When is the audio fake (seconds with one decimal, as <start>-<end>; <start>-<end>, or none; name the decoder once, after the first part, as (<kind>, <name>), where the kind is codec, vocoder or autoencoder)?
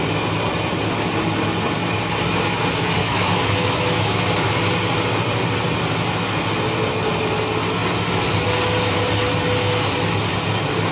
3.0-4.2 (autoencoder, DAC-VAE)